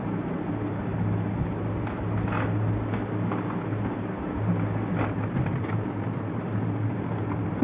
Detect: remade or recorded recorded